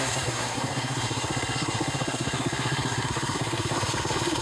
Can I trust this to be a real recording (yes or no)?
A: no